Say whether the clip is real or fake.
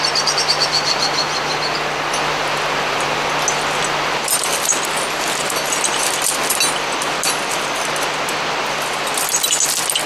real